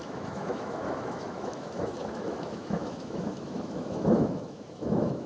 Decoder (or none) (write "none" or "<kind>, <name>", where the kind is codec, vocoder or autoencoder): autoencoder, DAC-VAE